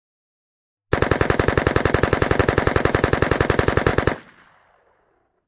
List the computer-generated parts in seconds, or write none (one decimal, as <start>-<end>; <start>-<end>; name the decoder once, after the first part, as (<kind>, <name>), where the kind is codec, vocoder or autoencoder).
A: none